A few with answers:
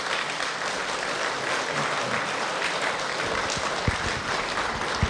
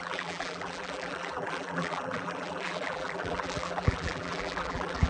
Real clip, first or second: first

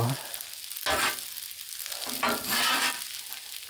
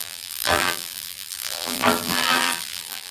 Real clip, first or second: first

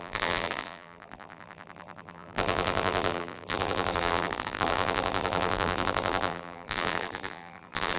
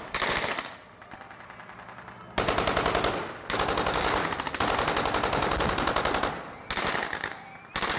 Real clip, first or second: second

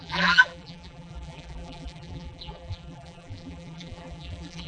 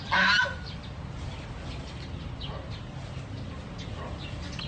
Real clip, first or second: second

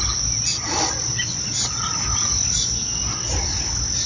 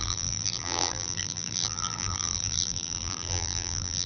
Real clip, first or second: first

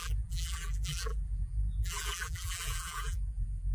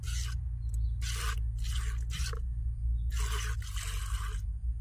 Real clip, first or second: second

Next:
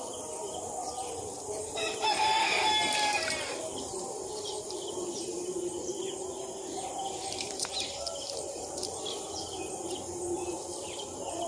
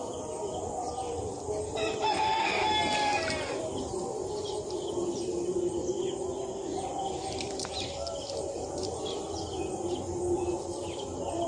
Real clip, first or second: second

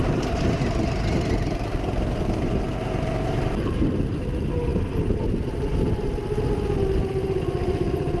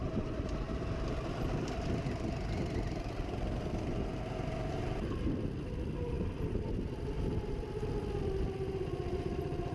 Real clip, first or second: first